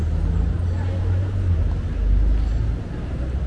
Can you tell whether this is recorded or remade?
recorded